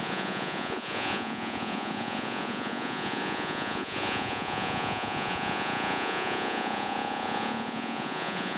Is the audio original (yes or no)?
no